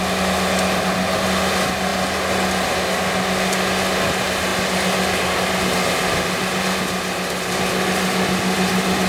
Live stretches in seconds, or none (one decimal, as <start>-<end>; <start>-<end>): 0.0-9.1